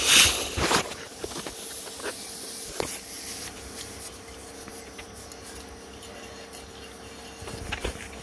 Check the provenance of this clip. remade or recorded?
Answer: recorded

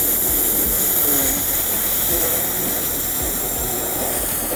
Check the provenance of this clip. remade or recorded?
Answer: recorded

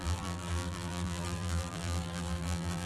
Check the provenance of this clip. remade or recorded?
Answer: remade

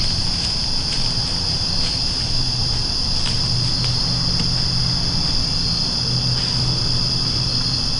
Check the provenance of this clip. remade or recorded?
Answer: recorded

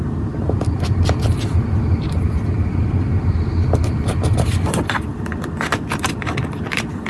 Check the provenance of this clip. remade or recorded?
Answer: remade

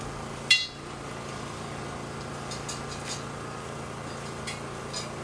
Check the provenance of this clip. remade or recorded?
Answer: recorded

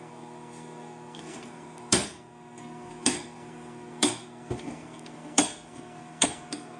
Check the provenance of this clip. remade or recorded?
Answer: remade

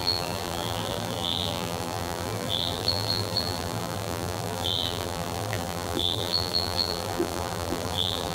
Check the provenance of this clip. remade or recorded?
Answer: remade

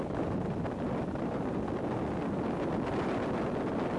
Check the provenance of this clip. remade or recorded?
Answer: recorded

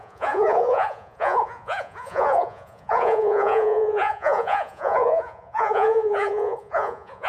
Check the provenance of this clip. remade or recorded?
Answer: remade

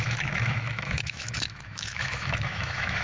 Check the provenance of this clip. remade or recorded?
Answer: remade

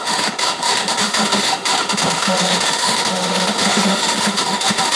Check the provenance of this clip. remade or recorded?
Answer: remade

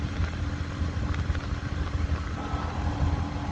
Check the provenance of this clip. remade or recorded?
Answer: recorded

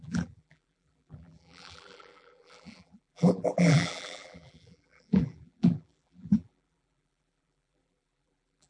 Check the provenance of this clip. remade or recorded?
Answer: remade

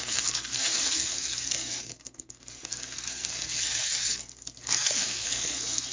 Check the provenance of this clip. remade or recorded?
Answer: remade